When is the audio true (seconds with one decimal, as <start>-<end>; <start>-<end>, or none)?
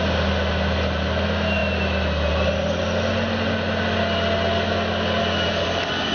0.0-6.1